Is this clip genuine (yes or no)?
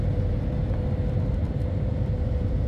yes